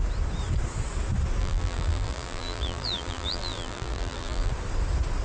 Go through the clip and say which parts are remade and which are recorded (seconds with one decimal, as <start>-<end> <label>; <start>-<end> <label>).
0.0-1.4 recorded; 1.4-4.5 remade; 4.5-5.2 recorded